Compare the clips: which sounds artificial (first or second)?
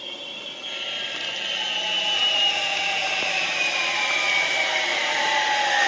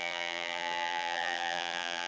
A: second